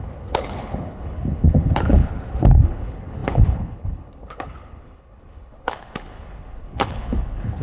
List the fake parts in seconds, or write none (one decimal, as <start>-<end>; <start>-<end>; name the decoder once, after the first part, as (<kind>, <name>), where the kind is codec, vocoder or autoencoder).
0.0-7.6 (codec, HILCodec)